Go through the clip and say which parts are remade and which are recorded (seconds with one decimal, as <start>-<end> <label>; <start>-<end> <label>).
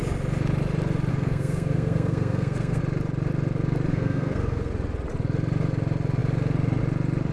0.0-1.1 recorded; 1.1-2.8 remade; 2.8-3.9 recorded; 3.9-4.7 remade; 4.7-7.3 recorded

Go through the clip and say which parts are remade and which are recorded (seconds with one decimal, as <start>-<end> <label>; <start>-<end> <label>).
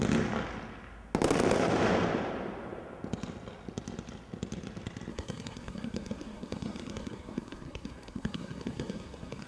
0.0-5.1 recorded; 5.1-9.5 remade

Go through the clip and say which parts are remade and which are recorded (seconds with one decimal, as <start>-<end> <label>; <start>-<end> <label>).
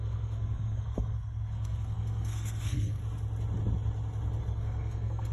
0.0-3.0 remade; 3.0-4.4 recorded; 4.4-5.3 remade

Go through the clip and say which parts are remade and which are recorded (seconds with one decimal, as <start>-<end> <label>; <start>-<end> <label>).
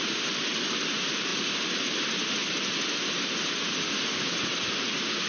0.0-5.3 recorded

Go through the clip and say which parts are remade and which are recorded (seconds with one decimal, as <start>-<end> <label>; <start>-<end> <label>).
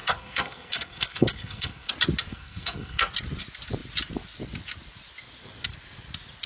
0.0-1.9 remade; 1.9-2.3 recorded; 2.3-3.1 remade; 3.1-6.5 recorded